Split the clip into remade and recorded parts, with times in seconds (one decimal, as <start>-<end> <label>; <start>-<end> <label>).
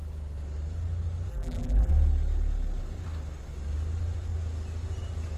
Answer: 0.0-1.3 recorded; 1.3-1.9 remade; 1.9-5.4 recorded